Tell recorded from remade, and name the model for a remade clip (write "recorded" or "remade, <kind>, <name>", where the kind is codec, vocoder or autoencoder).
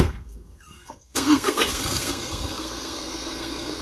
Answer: remade, codec, SNAC